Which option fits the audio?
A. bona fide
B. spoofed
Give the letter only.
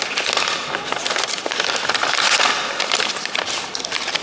A